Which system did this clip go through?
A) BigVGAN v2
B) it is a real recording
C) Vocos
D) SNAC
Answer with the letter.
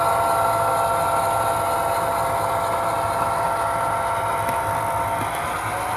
B